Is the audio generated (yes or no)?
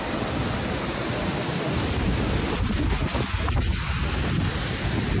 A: no